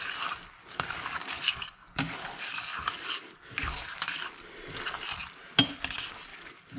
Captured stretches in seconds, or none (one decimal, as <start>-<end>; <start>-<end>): 0.0-0.6; 4.3-6.3